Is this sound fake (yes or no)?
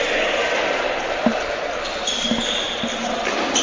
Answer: no